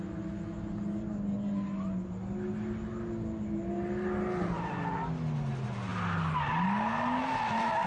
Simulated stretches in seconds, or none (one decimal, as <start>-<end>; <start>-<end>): none